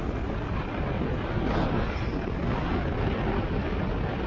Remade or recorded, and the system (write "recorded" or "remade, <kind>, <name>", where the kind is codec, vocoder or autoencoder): recorded